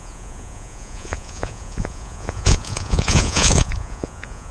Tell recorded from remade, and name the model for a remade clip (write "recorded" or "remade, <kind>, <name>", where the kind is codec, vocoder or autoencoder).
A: remade, vocoder, Vocos